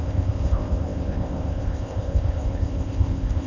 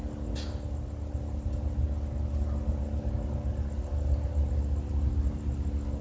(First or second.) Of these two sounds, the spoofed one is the first